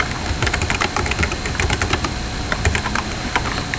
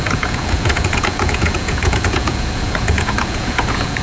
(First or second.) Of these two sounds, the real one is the first